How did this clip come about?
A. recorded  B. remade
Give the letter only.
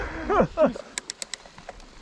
A